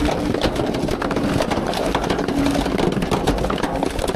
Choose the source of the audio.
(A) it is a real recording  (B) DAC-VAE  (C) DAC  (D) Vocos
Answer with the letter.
A